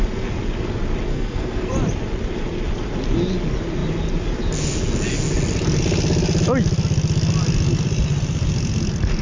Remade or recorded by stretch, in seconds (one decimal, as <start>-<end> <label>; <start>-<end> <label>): 0.0-1.1 recorded; 1.1-1.7 remade; 1.7-9.2 recorded

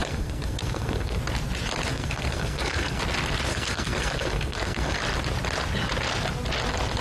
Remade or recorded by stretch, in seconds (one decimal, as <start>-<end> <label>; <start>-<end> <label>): 0.0-1.2 remade; 1.2-1.9 recorded; 1.9-3.0 remade; 3.0-3.5 recorded; 3.5-5.0 remade; 5.0-7.0 recorded